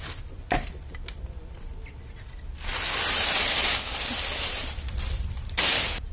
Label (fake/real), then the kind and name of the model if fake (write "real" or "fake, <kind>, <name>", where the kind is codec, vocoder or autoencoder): real